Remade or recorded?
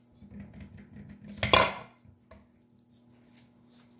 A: recorded